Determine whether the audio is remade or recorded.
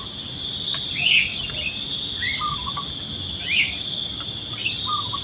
recorded